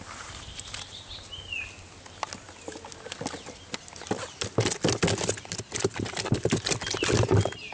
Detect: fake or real real